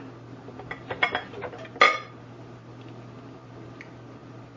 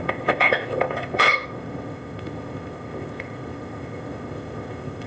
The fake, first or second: second